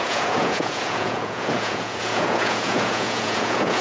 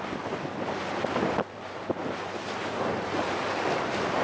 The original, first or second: second